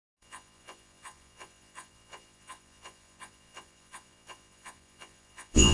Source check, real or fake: fake